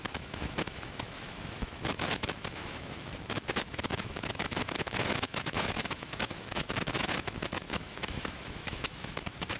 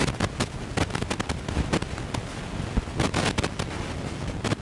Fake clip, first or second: first